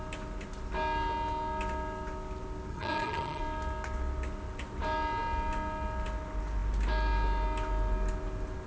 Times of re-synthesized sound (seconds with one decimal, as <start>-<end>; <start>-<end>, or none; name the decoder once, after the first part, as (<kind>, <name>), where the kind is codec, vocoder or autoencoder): 2.7-3.4 (vocoder, HiFi-GAN)